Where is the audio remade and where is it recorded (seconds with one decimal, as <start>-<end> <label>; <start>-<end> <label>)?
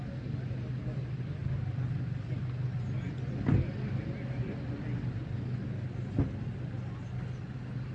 0.0-7.9 recorded